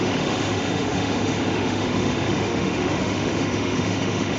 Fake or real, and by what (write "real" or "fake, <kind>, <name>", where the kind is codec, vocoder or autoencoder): fake, autoencoder, DAC-VAE